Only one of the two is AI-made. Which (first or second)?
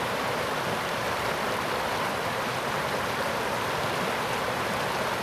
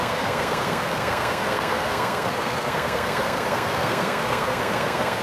second